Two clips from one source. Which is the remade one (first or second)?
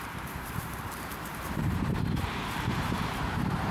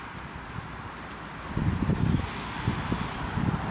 first